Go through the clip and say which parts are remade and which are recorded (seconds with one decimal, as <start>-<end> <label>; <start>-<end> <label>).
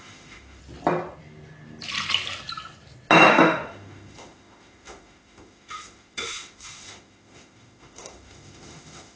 0.0-0.6 remade; 0.6-3.3 recorded; 3.3-9.2 remade